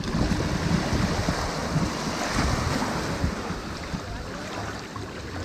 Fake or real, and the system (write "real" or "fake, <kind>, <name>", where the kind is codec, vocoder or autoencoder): real